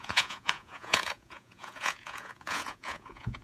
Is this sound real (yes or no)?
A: no